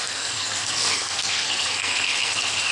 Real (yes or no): no